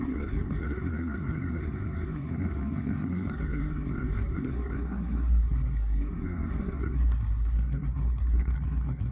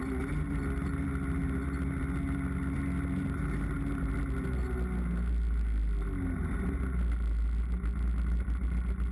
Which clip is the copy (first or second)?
first